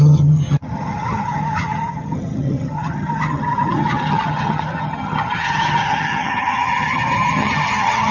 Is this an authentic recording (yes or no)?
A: no